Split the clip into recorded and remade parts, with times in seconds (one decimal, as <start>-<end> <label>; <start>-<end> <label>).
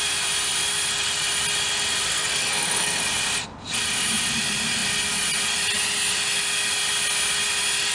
0.0-2.1 recorded; 2.1-3.0 remade; 3.0-7.9 recorded